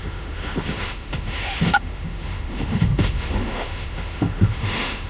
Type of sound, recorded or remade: remade